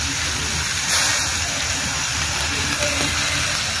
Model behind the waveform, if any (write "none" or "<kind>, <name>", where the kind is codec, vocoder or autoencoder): none